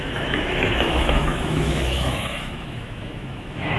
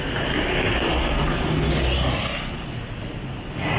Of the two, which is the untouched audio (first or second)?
second